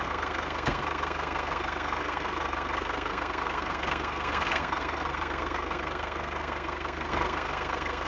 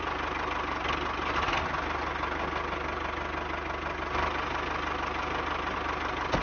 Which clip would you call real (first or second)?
second